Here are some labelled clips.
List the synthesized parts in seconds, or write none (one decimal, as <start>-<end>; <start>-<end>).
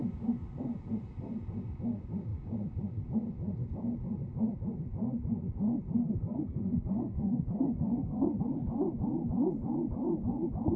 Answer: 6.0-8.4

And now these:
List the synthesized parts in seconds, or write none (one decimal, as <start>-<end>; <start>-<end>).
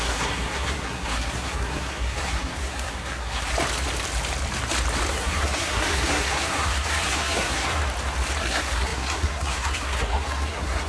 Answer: 0.0-3.5; 5.1-7.8; 8.4-10.9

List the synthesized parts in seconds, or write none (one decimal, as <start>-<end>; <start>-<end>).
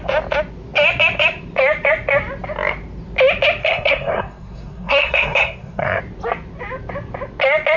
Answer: 3.6-6.0